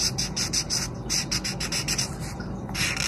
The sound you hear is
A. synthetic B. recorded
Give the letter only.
B